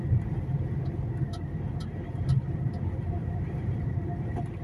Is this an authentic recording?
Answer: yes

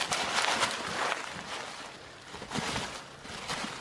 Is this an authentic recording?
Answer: yes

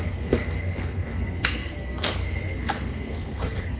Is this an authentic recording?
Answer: no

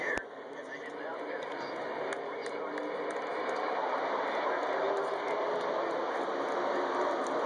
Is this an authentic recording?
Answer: yes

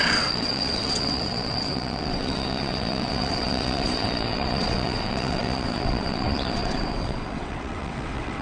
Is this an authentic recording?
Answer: no